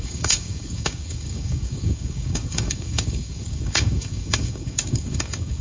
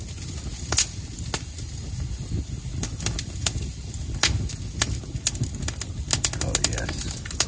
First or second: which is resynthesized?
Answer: first